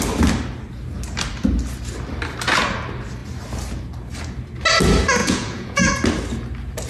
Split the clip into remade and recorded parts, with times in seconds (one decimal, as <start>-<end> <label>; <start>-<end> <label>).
0.0-5.2 recorded; 5.2-5.9 remade; 5.9-6.9 recorded